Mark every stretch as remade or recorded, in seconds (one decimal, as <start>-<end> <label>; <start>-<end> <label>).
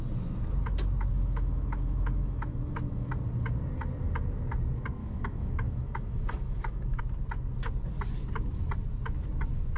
0.0-1.1 recorded; 1.1-3.1 remade; 3.1-5.0 recorded; 5.0-7.0 remade; 7.0-9.8 recorded